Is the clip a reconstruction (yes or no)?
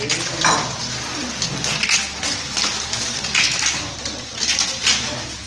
no